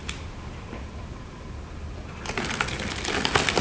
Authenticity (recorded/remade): recorded